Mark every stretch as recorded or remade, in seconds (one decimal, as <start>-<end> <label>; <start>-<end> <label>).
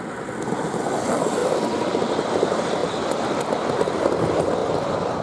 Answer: 0.0-4.6 recorded; 4.6-5.2 remade